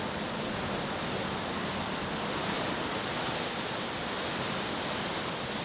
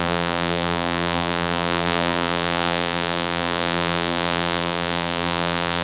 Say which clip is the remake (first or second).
second